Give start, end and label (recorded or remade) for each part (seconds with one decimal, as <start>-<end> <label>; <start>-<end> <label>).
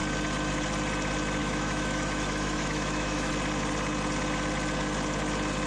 0.0-1.4 recorded; 1.4-3.3 remade; 3.3-5.7 recorded